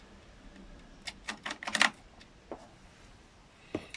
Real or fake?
real